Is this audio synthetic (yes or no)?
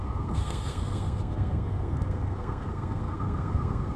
yes